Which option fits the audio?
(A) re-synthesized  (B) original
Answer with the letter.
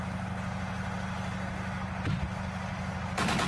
B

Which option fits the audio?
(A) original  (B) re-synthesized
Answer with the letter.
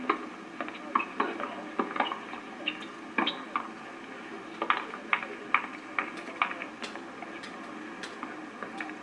A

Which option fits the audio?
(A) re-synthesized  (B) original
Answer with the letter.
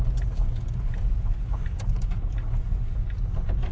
B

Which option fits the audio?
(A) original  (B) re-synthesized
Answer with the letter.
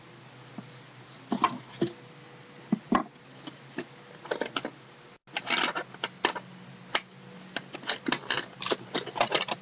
A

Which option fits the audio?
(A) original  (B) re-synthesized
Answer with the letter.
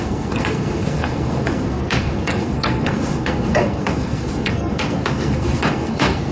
B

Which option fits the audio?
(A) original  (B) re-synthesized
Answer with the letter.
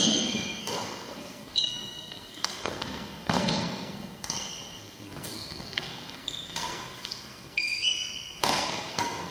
B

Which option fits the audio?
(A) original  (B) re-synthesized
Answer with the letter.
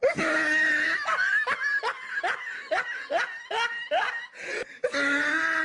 A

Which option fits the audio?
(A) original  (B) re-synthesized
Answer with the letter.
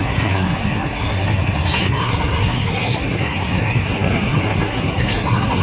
B